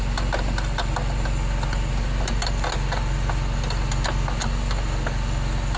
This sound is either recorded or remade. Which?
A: recorded